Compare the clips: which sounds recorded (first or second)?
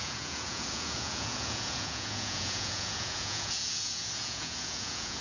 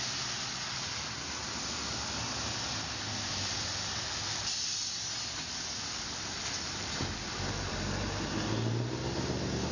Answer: second